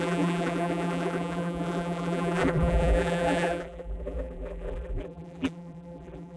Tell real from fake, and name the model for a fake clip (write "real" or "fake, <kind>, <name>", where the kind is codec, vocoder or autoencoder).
fake, vocoder, BigVGAN v2